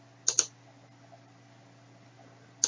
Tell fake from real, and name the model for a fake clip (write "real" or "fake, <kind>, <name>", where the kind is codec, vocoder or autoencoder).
real